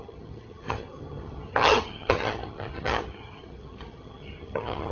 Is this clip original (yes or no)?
no